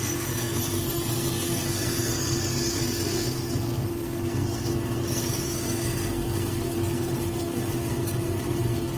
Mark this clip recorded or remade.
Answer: remade